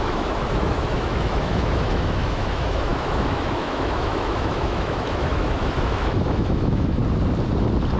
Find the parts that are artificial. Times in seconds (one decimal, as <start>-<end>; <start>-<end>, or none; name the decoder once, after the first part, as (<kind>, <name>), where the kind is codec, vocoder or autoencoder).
0.0-7.0 (autoencoder, DAC-VAE)